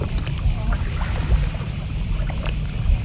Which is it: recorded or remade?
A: recorded